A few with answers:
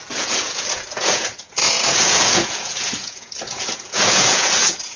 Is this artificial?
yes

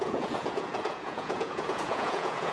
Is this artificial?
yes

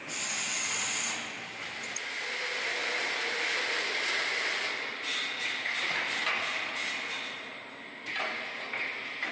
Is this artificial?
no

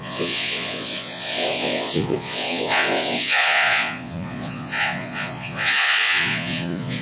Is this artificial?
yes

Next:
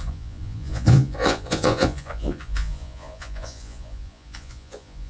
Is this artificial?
yes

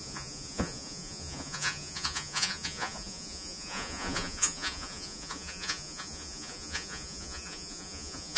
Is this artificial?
yes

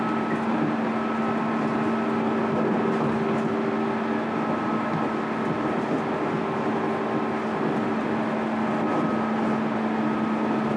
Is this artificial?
no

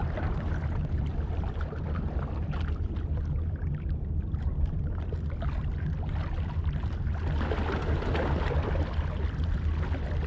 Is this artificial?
no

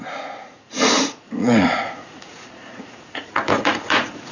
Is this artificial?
yes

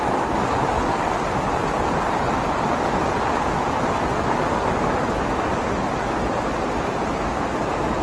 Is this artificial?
no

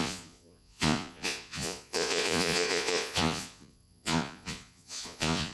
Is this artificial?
yes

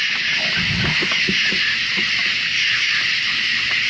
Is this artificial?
no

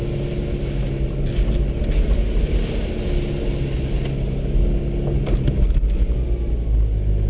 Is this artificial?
no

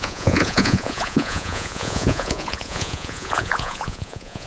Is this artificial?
yes